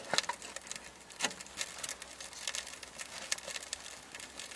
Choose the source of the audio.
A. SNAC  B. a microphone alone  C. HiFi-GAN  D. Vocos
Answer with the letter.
B